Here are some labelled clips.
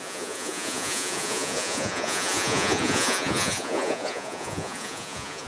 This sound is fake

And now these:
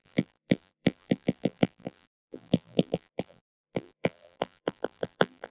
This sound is fake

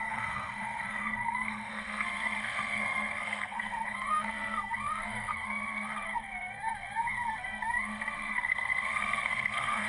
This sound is fake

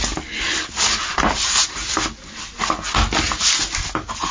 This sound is real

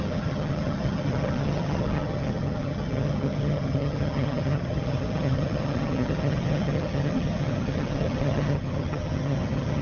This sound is fake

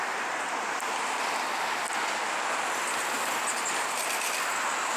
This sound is real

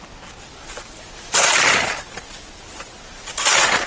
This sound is real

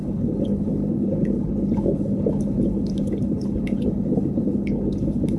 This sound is fake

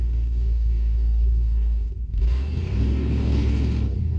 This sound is fake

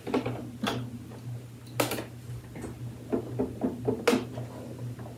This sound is real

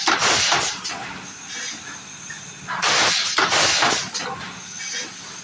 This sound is real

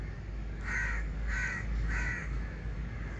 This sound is fake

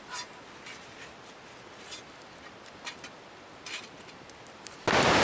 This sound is real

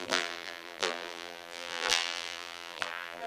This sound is fake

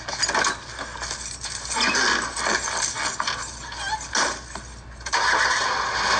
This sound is real